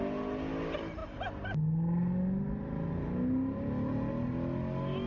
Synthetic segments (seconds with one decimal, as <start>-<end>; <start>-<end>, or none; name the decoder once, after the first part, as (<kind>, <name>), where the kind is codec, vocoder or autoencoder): none